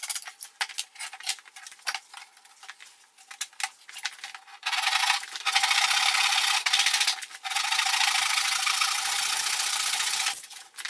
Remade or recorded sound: recorded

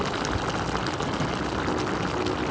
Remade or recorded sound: recorded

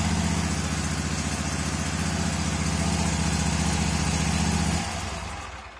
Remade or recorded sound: recorded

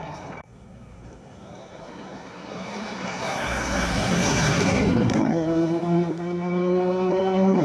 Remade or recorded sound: remade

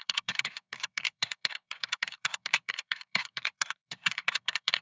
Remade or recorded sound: remade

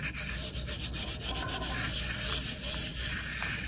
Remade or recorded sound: recorded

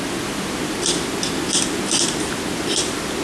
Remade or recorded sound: recorded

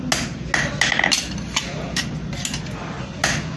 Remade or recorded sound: recorded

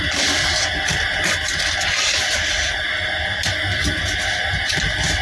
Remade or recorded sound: recorded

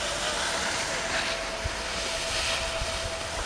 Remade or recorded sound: recorded